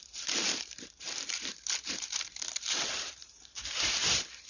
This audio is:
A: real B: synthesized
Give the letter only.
B